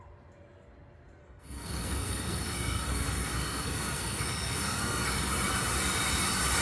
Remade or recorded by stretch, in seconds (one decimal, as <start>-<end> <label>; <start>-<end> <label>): 0.0-1.2 recorded; 1.2-5.2 remade; 5.2-6.6 recorded